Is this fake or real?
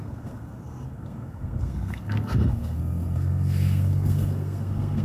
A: fake